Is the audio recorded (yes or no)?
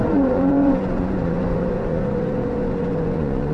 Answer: no